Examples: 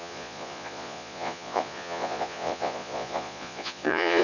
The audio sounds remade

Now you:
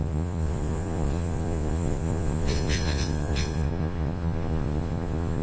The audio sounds remade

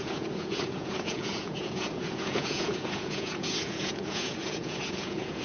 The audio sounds remade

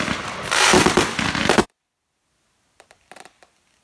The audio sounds recorded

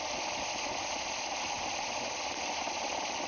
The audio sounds recorded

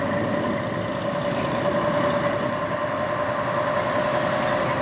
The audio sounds recorded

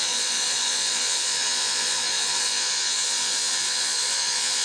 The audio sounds remade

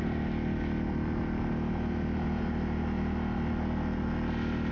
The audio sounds recorded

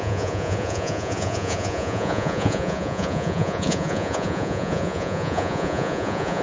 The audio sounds remade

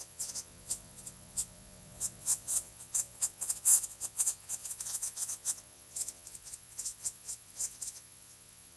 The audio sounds remade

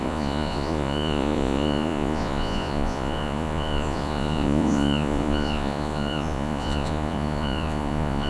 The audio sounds remade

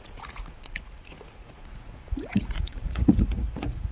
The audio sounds remade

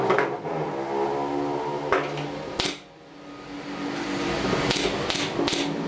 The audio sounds recorded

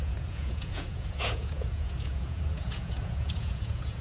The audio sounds remade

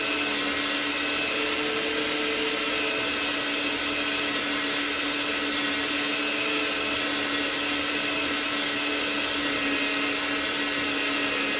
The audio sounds recorded